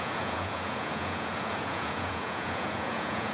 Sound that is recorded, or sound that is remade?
remade